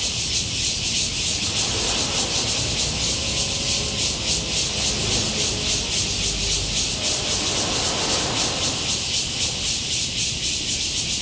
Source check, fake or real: real